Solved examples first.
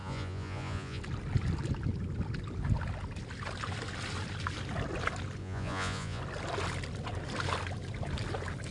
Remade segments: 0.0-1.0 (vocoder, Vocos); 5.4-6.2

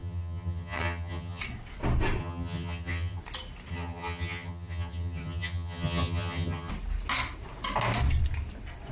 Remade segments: 0.0-1.4 (vocoder, HiFi-GAN); 2.2-3.2; 3.7-6.7

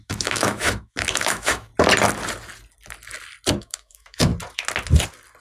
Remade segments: 0.0-1.7 (autoencoder, DAC-VAE); 3.5-4.3

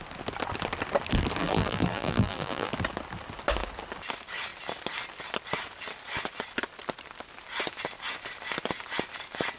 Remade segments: 1.4-2.7 (vocoder, BigVGAN v2)

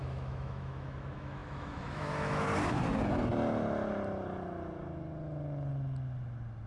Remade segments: 0.0-2.5 (autoencoder, DAC-VAE)

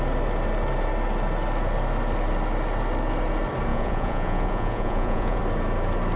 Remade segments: 3.7-5.4 (vocoder, Vocos)